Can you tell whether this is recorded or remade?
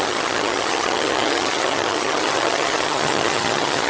remade